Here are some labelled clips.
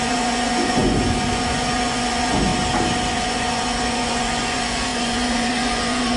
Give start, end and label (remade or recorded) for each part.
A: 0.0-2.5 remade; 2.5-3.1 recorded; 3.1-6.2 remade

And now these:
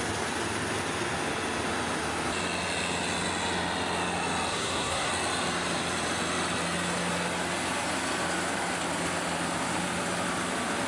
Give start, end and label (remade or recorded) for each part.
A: 0.0-4.5 recorded; 4.5-5.1 remade; 5.1-10.9 recorded